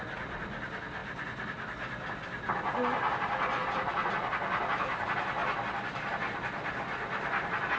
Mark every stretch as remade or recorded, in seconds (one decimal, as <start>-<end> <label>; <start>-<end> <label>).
0.0-7.8 recorded